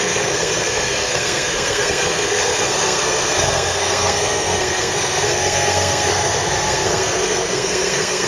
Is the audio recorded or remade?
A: remade